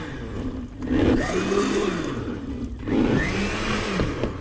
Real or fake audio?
real